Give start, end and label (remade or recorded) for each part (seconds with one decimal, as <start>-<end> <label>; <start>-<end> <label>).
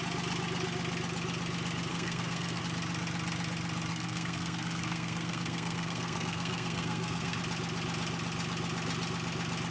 0.0-1.9 recorded; 1.9-2.6 remade; 2.6-3.9 recorded; 3.9-7.4 remade; 7.4-9.7 recorded